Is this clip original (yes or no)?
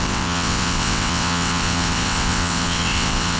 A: no